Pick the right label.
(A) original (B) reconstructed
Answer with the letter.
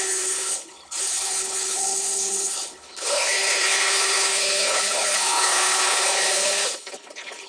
B